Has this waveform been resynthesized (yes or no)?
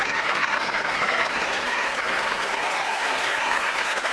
yes